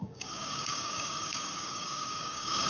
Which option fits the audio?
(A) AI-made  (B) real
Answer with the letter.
A